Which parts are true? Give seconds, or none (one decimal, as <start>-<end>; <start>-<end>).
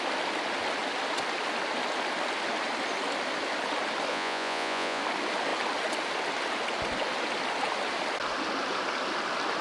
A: 0.0-4.1; 5.0-9.6